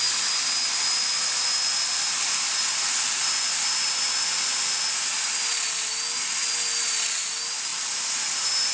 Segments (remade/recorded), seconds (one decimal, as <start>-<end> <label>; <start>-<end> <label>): 0.0-8.7 recorded